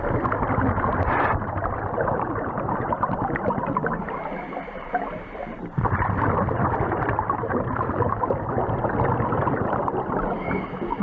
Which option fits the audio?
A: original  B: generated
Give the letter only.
A